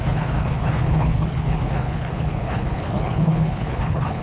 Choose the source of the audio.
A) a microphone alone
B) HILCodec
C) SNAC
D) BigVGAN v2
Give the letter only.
B